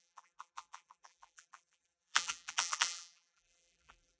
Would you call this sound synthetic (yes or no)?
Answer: yes